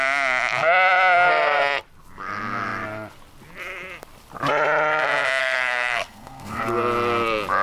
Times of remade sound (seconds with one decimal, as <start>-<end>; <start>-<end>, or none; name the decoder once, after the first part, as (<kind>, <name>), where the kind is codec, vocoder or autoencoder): 5.4-6.6 (codec, SNAC)